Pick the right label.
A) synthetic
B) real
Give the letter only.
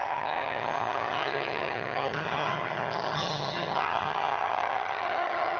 A